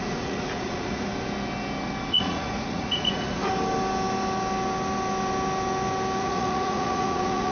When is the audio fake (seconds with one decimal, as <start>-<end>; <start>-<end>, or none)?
0.0-1.1; 2.1-3.4; 6.2-7.5